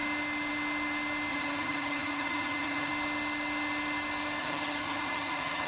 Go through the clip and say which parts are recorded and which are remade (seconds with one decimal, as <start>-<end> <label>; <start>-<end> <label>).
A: 0.0-1.3 recorded; 1.3-2.9 remade; 2.9-4.4 recorded; 4.4-5.7 remade